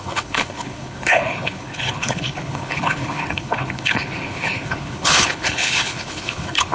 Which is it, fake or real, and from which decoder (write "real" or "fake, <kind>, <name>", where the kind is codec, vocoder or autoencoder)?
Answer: fake, codec, HILCodec